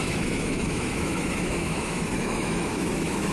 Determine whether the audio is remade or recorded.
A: remade